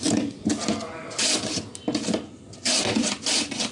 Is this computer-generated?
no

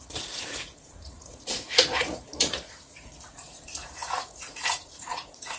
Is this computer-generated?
yes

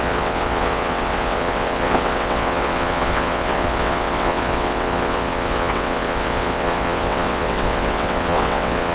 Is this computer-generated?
yes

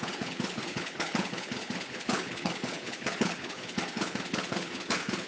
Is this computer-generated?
yes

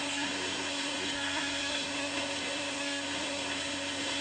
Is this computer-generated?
yes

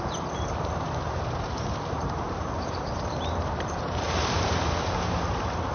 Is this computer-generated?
yes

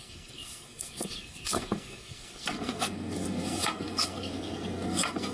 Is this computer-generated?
yes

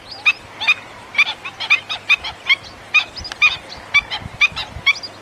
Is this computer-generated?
no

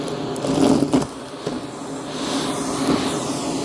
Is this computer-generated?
no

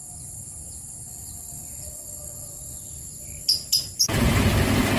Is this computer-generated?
no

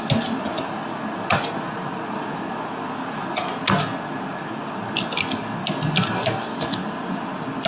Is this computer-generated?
no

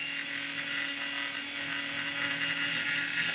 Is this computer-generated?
no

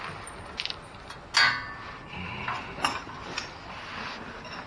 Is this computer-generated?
no